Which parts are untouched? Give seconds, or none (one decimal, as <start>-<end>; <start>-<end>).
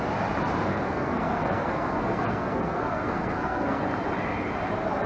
0.0-0.7; 3.8-5.1